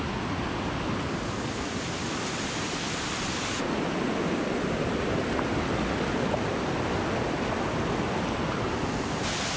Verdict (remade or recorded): recorded